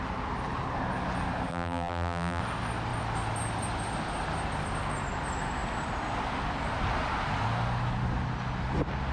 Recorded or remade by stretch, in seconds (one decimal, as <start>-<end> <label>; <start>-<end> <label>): 0.0-1.5 recorded; 1.5-2.4 remade; 2.4-9.1 recorded

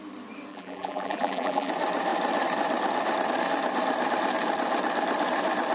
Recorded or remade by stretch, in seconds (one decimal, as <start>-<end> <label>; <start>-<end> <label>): 0.0-0.5 recorded; 0.5-1.7 remade; 1.7-5.7 recorded

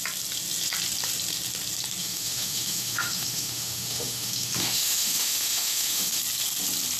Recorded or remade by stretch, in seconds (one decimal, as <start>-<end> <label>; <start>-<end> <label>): 0.0-2.0 recorded; 2.0-6.2 remade; 6.2-7.0 recorded

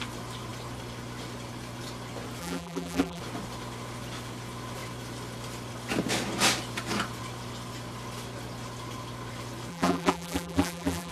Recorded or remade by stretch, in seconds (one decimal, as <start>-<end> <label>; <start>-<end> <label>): 0.0-2.4 recorded; 2.4-3.2 remade; 3.2-9.7 recorded; 9.7-11.1 remade

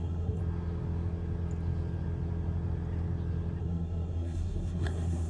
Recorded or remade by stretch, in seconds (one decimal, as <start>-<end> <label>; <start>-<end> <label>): 0.0-0.4 remade; 0.4-3.6 recorded; 3.6-5.3 remade

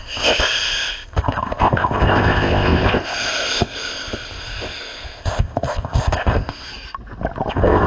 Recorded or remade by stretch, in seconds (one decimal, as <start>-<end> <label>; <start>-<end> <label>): 0.0-6.7 remade; 6.7-7.5 recorded; 7.5-7.9 remade

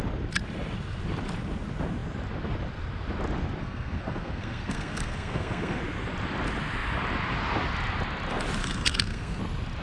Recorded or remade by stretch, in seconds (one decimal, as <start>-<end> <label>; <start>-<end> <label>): 0.0-3.6 recorded; 3.6-5.8 remade; 5.8-8.6 recorded; 8.6-9.4 remade; 9.4-9.8 recorded